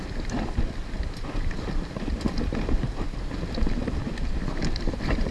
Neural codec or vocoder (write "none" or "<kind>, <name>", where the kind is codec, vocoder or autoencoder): none